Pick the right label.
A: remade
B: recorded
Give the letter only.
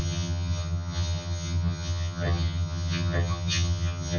A